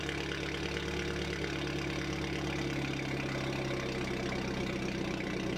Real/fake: real